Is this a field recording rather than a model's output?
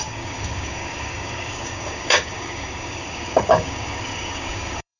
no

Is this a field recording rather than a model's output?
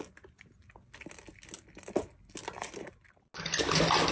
yes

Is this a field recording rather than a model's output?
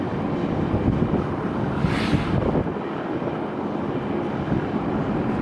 yes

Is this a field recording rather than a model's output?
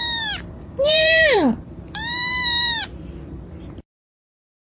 no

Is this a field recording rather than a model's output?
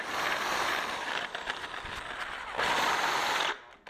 no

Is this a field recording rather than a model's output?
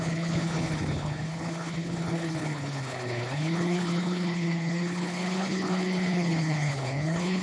no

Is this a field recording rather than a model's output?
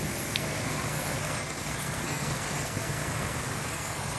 no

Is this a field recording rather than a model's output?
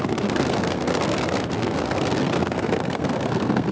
no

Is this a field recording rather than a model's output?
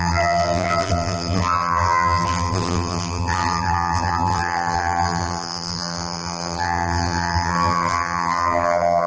no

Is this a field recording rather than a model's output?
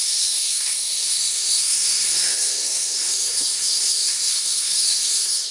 no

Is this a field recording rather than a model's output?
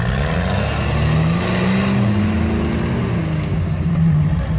yes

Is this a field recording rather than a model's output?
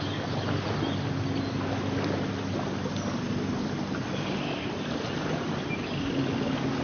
yes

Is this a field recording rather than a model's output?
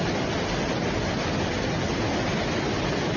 yes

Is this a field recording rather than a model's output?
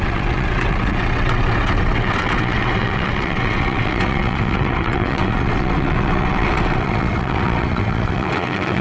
no